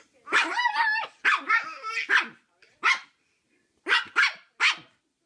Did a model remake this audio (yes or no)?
no